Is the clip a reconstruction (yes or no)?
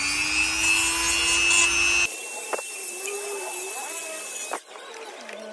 no